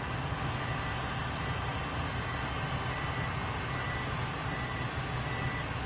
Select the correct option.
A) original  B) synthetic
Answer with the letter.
A